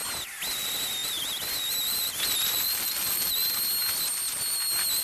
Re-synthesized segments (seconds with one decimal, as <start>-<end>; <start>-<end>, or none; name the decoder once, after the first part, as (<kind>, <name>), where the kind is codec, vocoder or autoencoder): 0.6-3.4 (vocoder, BigVGAN v2)